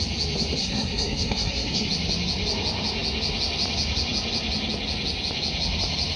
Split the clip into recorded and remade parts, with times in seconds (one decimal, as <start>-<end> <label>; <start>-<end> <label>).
0.0-0.6 recorded; 0.6-1.9 remade; 1.9-6.2 recorded